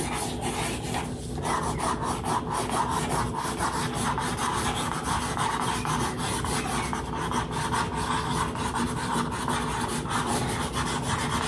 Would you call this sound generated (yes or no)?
no